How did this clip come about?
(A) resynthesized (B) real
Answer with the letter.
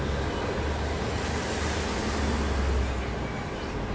B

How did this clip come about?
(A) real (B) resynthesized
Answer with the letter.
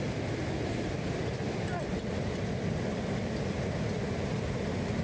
A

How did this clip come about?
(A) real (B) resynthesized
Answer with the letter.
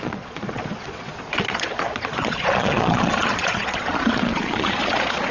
B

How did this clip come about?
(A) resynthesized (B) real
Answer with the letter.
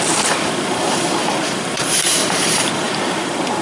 A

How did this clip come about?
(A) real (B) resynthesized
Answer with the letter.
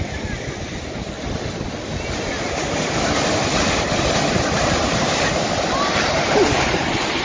A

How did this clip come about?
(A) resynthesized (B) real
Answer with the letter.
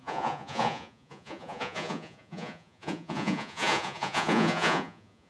A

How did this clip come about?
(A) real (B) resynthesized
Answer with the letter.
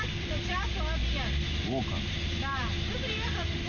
A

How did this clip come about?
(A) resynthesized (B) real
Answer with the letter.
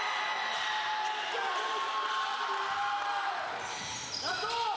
B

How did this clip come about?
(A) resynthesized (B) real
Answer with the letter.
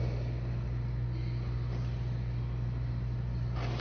B